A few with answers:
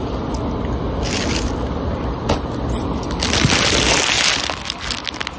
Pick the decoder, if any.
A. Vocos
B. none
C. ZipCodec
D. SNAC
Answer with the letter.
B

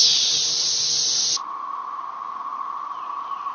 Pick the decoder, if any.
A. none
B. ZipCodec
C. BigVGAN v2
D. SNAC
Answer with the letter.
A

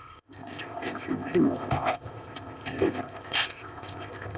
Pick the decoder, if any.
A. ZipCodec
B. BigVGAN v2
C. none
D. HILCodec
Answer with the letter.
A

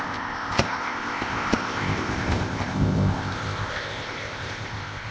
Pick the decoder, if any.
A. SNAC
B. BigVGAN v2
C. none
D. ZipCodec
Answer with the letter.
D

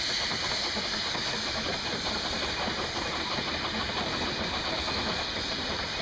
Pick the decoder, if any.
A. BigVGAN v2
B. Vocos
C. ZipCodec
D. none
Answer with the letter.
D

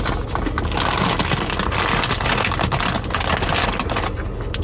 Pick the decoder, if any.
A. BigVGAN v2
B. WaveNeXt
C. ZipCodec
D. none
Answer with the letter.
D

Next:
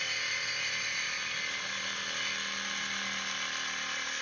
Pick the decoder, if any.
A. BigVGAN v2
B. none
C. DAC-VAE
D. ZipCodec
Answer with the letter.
B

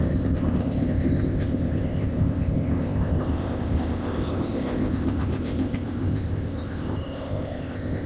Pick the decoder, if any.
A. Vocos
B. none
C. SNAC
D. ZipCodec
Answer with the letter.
D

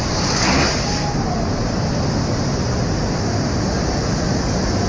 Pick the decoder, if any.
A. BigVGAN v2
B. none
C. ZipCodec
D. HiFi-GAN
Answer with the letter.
B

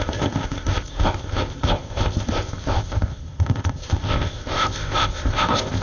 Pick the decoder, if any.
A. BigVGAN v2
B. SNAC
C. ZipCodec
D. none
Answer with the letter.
C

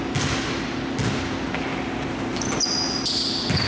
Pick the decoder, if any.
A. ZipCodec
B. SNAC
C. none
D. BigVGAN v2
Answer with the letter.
C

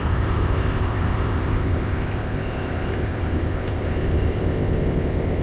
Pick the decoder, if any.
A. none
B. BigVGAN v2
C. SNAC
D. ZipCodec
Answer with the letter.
D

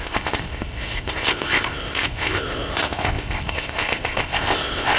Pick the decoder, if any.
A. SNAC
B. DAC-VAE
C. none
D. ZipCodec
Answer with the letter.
D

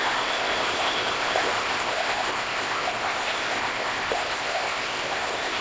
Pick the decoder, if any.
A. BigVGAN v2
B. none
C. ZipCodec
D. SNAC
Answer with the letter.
C